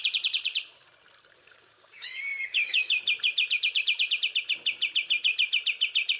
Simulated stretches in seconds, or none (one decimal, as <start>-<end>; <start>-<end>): 1.4-2.9